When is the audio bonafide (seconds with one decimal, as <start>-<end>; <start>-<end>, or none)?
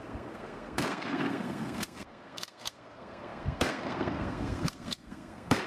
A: none